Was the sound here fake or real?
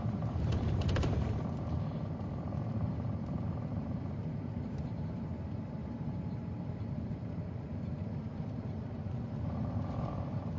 fake